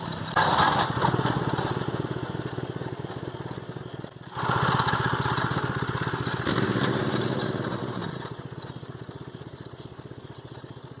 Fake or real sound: real